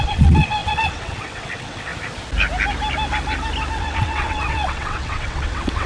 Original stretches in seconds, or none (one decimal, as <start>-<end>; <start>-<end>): 1.9-3.8